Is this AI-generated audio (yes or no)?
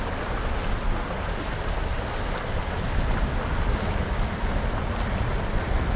no